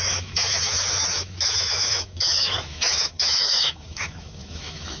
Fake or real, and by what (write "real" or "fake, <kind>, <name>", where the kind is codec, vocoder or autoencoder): fake, autoencoder, DAC-VAE